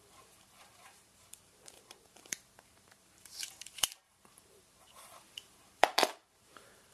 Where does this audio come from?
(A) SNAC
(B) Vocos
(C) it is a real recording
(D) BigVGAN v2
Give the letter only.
D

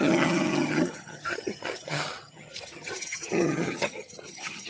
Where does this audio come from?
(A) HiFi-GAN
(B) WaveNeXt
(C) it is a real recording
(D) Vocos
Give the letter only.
A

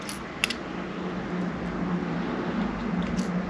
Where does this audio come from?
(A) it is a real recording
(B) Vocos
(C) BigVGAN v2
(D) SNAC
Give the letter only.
A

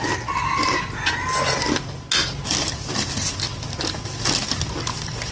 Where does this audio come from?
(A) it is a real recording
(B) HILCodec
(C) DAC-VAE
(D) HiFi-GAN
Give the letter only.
A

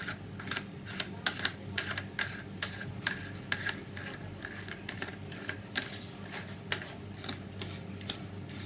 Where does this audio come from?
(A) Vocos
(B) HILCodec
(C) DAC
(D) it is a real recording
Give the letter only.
D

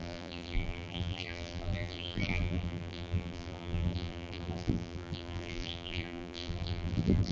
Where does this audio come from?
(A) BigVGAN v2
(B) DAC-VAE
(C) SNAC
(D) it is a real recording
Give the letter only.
A